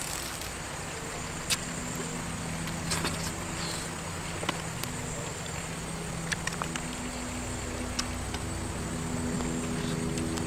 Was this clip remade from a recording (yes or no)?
no